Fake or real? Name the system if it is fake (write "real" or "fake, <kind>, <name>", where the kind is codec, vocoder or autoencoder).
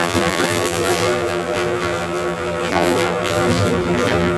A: fake, vocoder, BigVGAN v2